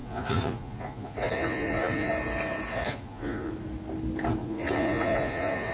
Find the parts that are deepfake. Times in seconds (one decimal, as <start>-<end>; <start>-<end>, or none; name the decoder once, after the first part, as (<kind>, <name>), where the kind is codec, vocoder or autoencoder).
0.0-2.1 (vocoder, Vocos); 2.7-3.5; 4.4-5.7